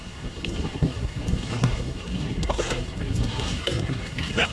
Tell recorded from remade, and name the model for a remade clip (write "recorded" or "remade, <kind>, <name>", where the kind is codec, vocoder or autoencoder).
remade, codec, SNAC